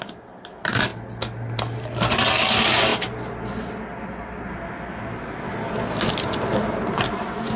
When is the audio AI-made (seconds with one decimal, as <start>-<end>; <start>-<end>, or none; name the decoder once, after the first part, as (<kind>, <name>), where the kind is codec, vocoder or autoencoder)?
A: none